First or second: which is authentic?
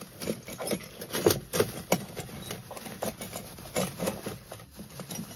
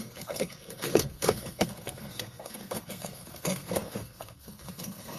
first